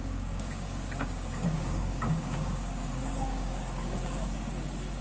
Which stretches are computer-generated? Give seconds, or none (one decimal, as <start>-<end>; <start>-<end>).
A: 0.0-5.0